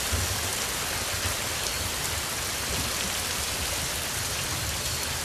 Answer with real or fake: real